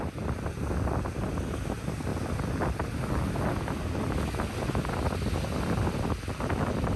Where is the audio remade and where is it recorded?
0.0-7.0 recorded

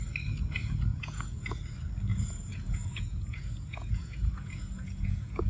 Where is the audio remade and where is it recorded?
0.0-0.9 recorded; 0.9-1.6 remade; 1.6-2.1 recorded; 2.1-5.5 remade

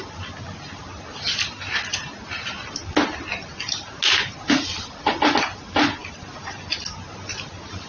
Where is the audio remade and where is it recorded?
0.0-7.9 recorded

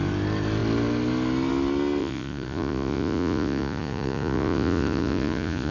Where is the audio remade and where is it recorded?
0.0-2.0 recorded; 2.0-5.7 remade